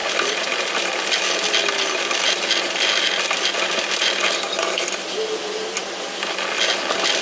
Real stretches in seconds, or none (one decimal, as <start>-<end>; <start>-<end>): 0.0-7.2